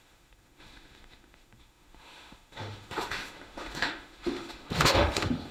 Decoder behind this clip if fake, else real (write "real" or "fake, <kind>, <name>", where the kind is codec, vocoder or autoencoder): fake, autoencoder, DAC-VAE